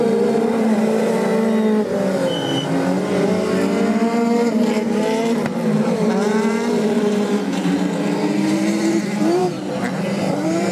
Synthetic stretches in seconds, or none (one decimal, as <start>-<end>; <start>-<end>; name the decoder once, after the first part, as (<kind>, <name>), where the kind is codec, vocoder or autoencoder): 0.0-1.3 (vocoder, BigVGAN v2); 3.9-10.7